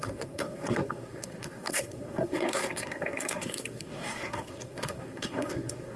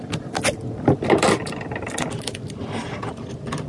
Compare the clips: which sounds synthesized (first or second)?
first